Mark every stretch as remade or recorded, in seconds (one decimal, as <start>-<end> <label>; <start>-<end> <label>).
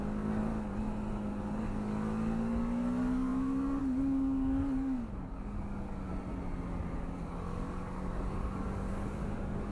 0.0-0.5 remade; 0.5-1.1 recorded; 1.1-6.1 remade; 6.1-6.7 recorded; 6.7-9.7 remade